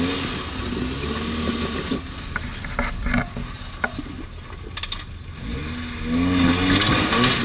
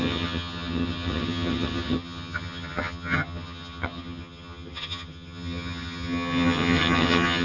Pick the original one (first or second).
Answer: first